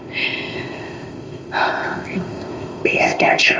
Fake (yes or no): yes